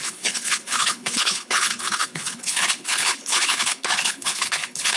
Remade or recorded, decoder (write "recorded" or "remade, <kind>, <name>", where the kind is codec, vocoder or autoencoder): remade, codec, HILCodec